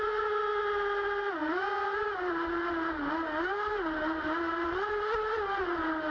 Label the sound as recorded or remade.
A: recorded